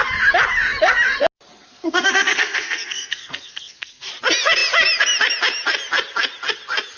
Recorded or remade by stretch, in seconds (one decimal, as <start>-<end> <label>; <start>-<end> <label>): 0.0-1.7 recorded; 1.7-4.1 remade; 4.1-7.0 recorded